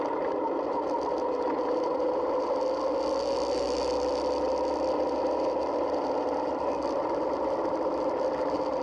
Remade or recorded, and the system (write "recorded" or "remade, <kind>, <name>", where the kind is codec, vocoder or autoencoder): recorded